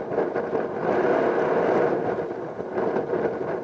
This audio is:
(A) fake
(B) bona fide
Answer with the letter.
B